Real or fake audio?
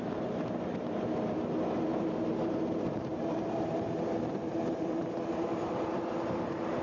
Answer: fake